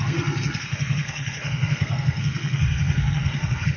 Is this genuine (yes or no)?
no